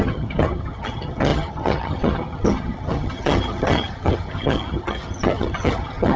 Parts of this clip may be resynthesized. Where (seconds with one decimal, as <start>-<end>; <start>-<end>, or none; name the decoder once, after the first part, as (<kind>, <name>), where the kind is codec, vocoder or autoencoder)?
0.0-6.2 (vocoder, HiFi-GAN)